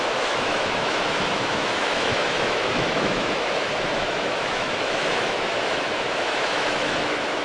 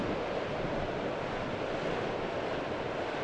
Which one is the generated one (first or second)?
first